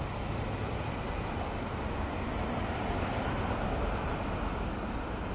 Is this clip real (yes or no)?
yes